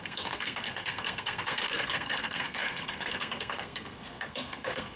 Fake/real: fake